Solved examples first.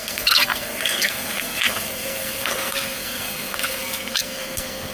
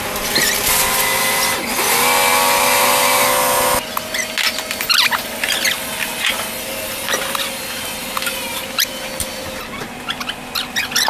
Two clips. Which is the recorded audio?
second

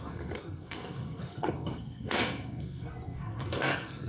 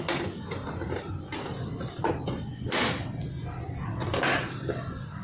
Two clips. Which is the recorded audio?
second